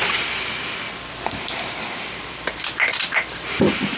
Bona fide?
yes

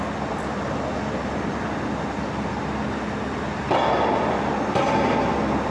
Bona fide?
yes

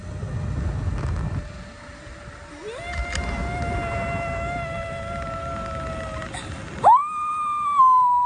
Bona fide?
yes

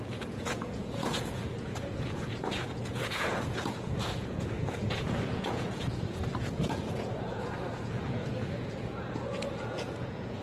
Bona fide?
no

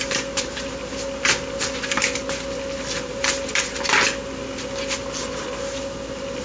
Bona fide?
yes